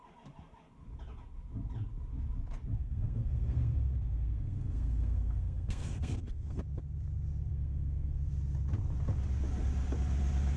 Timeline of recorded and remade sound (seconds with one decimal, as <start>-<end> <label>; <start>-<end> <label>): 0.0-2.8 recorded; 2.8-6.6 remade; 6.6-7.5 recorded; 7.5-8.3 remade; 8.3-10.6 recorded